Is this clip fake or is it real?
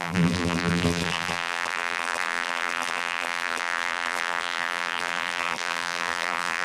fake